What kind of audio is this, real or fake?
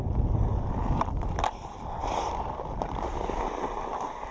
real